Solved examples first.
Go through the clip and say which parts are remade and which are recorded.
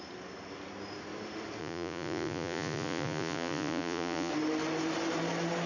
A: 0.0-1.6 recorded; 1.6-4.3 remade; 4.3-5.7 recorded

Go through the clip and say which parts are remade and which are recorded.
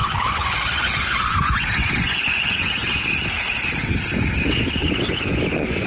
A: 0.0-3.0 remade; 3.0-4.8 recorded; 4.8-5.9 remade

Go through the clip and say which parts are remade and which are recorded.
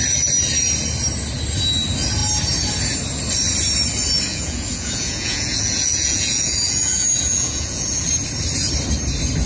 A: 0.0-4.3 recorded; 4.3-8.1 remade; 8.1-9.5 recorded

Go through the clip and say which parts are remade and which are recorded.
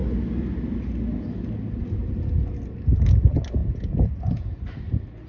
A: 0.0-3.6 recorded; 3.6-4.6 remade; 4.6-5.3 recorded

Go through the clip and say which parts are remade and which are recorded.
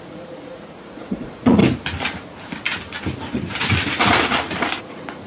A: 0.0-1.6 remade; 1.6-4.8 recorded; 4.8-5.3 remade